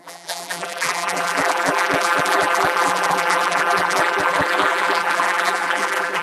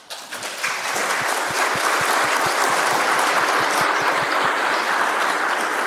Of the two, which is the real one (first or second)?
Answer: second